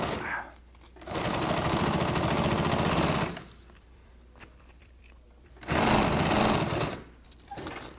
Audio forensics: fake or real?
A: fake